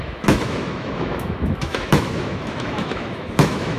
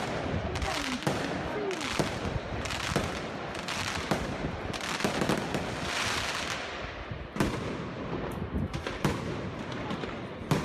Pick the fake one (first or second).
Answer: first